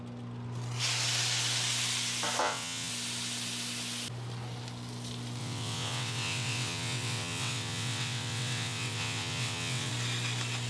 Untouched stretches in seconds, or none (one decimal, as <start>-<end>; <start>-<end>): 0.0-2.4; 2.9-5.4; 9.9-10.7